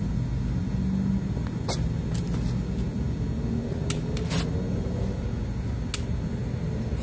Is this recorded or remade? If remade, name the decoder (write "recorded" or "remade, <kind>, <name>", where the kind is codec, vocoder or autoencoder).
recorded